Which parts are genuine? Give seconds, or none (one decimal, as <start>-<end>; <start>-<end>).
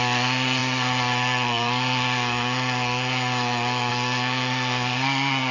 none